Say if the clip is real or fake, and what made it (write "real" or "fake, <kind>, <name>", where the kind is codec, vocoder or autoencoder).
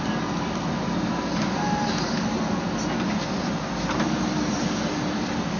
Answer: real